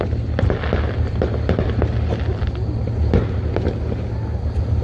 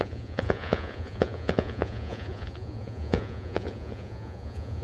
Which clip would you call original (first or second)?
first